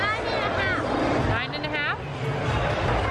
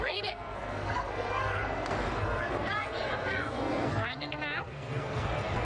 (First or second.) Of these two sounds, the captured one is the first